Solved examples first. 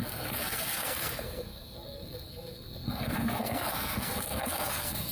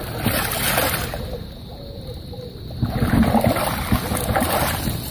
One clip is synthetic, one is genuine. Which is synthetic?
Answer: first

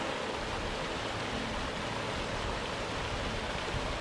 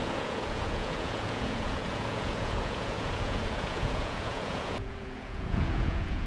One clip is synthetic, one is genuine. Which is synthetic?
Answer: second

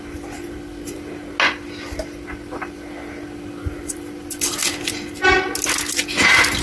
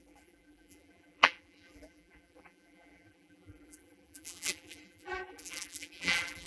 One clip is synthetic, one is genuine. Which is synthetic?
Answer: second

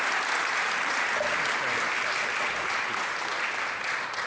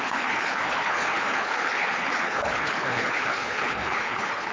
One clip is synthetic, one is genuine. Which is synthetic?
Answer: second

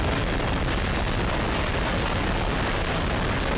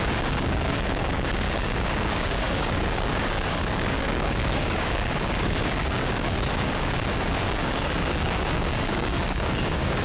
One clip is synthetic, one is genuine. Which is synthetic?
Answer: second